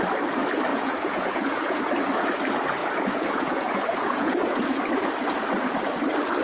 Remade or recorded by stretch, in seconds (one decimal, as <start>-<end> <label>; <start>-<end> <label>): 0.0-0.7 recorded; 0.7-1.8 remade; 1.8-2.8 recorded; 2.8-4.8 remade; 4.8-6.4 recorded